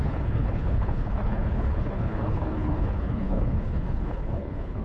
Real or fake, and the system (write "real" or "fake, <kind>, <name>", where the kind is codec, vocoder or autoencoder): fake, codec, HILCodec